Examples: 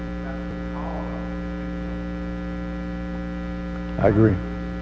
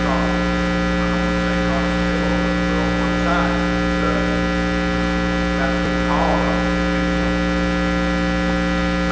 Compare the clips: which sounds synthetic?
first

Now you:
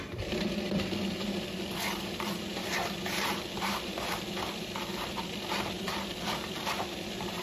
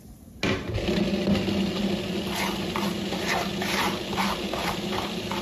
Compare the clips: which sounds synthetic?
first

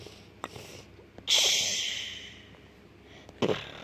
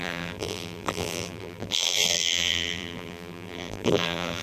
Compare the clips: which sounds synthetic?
second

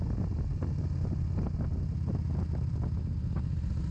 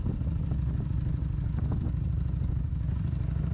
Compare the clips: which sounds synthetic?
second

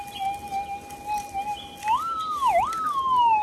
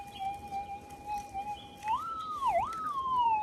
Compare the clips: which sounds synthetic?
second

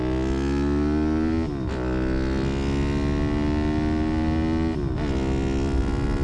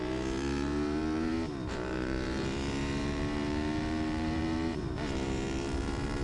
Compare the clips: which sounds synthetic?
second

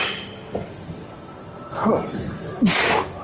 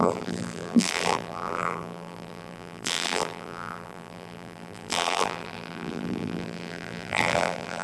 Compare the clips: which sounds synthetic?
second